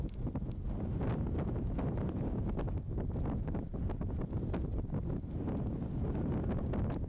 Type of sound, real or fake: real